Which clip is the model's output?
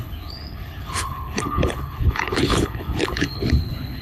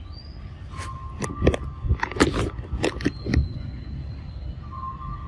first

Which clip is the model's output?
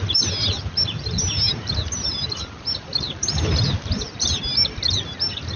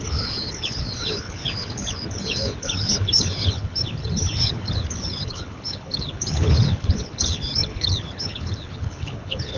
second